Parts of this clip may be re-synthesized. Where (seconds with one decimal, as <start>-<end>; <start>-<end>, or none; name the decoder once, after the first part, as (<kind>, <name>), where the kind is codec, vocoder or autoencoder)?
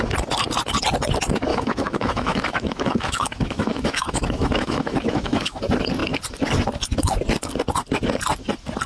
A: 1.5-5.6 (autoencoder, DAC-VAE)